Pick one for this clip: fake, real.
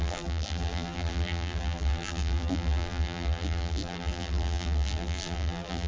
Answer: fake